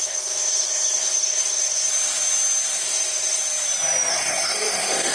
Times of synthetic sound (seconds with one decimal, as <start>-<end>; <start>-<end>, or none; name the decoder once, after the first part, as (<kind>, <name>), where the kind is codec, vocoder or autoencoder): 0.0-1.9 (codec, SNAC); 2.8-3.4; 4.1-5.1